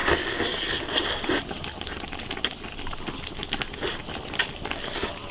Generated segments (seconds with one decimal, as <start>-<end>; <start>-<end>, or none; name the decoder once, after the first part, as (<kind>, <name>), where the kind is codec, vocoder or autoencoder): none